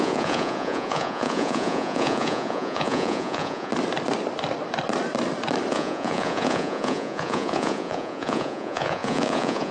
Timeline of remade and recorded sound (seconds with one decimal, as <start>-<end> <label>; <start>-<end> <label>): 0.0-3.7 remade; 3.7-5.7 recorded; 5.7-9.7 remade